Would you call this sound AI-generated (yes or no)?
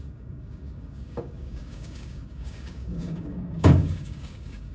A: yes